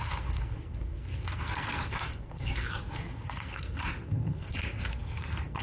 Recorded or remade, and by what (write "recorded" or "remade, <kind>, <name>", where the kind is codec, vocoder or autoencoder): remade, codec, SNAC